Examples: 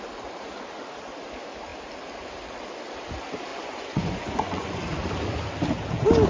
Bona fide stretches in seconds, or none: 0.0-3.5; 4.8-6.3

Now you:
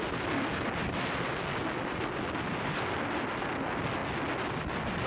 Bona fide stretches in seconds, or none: 0.0-5.1

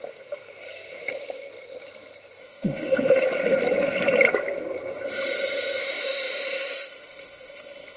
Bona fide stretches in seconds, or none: 0.0-2.4; 3.2-5.8

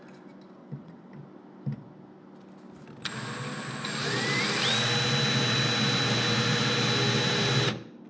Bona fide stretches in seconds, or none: 0.0-0.6; 1.1-8.1

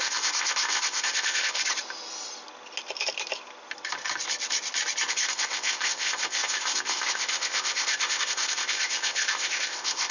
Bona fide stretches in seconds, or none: 1.6-5.1

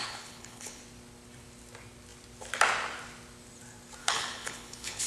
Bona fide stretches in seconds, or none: 0.8-4.0

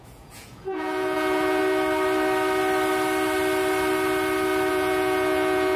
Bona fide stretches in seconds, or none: 1.6-4.7

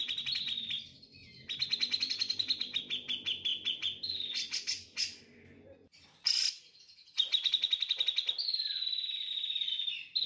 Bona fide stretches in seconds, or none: 0.0-10.3